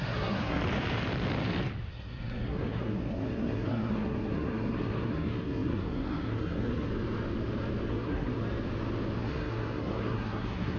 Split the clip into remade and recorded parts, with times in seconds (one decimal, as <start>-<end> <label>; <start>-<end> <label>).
0.0-0.6 remade; 0.6-1.9 recorded; 1.9-6.9 remade; 6.9-7.9 recorded; 7.9-8.4 remade; 8.4-9.2 recorded; 9.2-10.8 remade